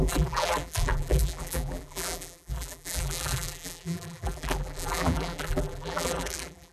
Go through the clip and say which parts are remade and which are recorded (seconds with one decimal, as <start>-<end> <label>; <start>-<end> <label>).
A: 0.0-6.7 remade